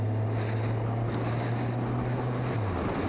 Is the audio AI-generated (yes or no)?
no